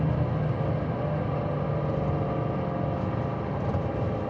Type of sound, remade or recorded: recorded